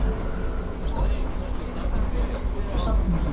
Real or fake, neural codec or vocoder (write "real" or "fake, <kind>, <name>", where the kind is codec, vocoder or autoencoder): real